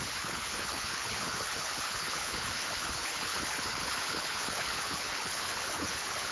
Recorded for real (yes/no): no